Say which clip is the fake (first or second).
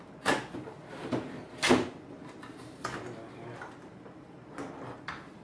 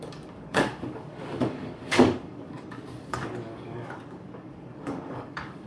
second